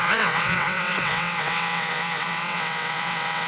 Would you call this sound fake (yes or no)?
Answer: yes